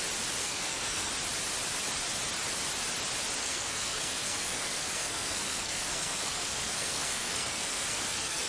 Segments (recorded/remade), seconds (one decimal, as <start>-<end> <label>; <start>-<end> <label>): 0.0-0.4 recorded; 0.4-1.1 remade; 1.1-3.4 recorded; 3.4-8.5 remade